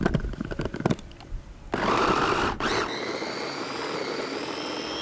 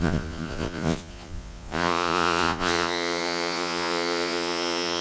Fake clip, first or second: second